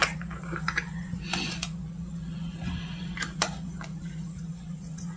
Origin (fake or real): fake